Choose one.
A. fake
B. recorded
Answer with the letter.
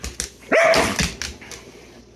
B